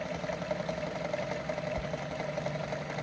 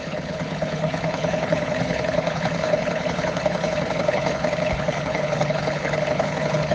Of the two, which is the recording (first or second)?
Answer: first